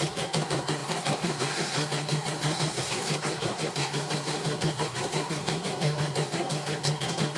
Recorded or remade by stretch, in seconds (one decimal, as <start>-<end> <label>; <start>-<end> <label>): 0.0-7.4 remade